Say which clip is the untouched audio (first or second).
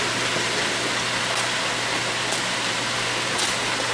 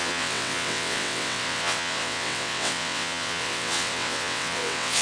first